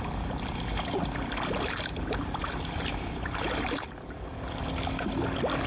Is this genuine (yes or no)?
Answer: yes